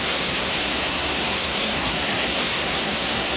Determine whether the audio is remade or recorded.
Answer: remade